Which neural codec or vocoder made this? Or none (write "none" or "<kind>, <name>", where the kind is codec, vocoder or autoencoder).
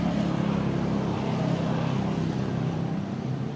none